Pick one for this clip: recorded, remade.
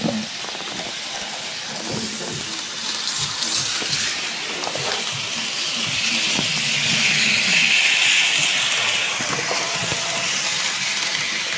recorded